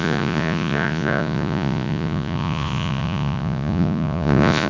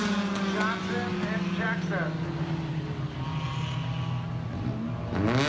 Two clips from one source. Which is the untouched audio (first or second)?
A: second